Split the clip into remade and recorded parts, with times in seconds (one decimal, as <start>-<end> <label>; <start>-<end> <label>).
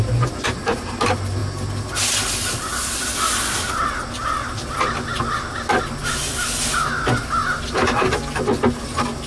0.0-9.3 recorded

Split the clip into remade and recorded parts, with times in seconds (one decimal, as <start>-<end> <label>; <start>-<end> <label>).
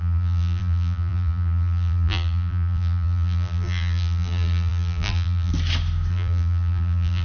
0.0-5.5 remade; 5.5-6.1 recorded; 6.1-7.2 remade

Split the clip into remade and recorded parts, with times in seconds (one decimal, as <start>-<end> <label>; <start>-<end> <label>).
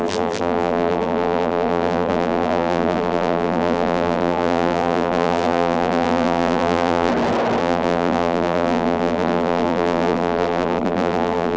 0.0-7.1 remade; 7.1-7.6 recorded; 7.6-11.6 remade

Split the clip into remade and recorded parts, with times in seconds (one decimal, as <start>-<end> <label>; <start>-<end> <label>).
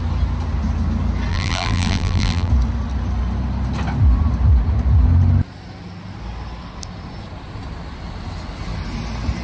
0.0-1.3 recorded; 1.3-2.5 remade; 2.5-9.4 recorded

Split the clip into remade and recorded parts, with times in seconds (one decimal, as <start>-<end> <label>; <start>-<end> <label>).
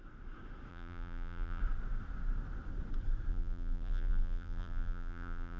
0.0-0.7 recorded; 0.7-1.6 remade; 1.6-3.3 recorded; 3.3-5.6 remade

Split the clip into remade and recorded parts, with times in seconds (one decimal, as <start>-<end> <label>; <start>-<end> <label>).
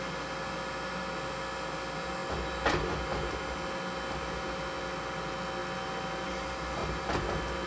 0.0-5.6 recorded; 5.6-6.3 remade; 6.3-7.7 recorded